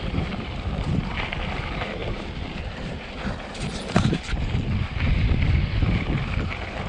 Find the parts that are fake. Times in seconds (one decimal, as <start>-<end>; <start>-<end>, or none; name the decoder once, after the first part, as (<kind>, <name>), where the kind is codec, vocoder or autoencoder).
0.0-2.0 (vocoder, BigVGAN v2); 2.6-6.9